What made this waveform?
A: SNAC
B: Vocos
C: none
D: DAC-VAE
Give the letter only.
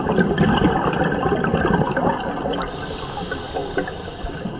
C